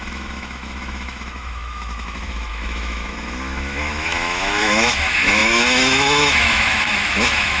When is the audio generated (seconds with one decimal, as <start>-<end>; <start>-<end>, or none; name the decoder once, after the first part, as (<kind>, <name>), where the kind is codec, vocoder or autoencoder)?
0.0-7.6 (autoencoder, DAC-VAE)